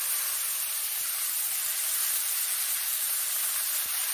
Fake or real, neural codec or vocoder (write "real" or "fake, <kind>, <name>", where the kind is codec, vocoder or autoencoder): real